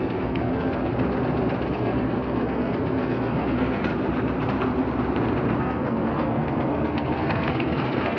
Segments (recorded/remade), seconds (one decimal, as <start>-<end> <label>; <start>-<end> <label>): 0.0-0.9 remade; 0.9-1.7 recorded; 1.7-3.9 remade; 3.9-5.6 recorded; 5.6-8.2 remade